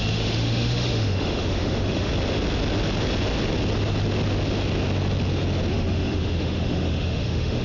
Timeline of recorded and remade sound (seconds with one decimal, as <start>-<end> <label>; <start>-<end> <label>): 0.0-2.1 remade; 2.1-5.7 recorded; 5.7-7.6 remade